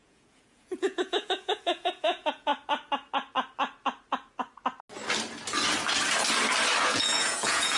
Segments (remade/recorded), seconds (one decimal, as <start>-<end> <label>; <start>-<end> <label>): 0.0-2.5 remade; 2.5-6.8 recorded; 6.8-7.8 remade